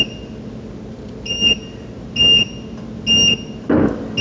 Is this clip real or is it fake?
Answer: real